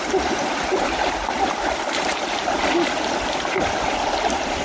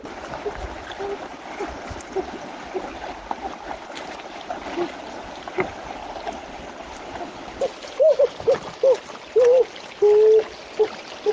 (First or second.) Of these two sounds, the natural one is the second